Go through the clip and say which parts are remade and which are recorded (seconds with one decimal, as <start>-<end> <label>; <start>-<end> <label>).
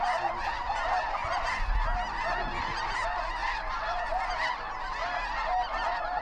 0.0-1.4 remade; 1.4-3.4 recorded; 3.4-4.3 remade; 4.3-6.2 recorded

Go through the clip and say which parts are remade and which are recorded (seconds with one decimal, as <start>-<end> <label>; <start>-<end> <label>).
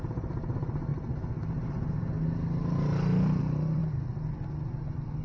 0.0-0.9 remade; 0.9-3.4 recorded; 3.4-3.8 remade; 3.8-5.2 recorded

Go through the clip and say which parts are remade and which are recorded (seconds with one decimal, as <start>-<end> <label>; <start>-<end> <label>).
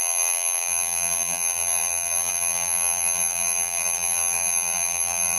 0.0-5.4 remade